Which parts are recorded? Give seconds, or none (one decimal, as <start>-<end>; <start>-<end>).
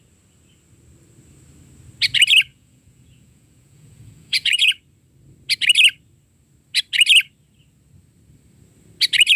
0.0-2.5; 4.7-9.4